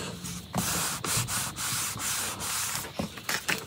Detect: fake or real real